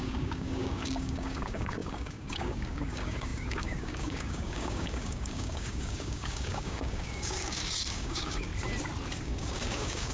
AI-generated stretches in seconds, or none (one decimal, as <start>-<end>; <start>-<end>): 0.0-8.5; 9.2-10.1